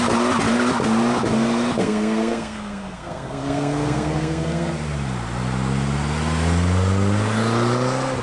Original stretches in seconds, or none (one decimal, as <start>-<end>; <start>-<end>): 0.0-1.8; 4.7-8.2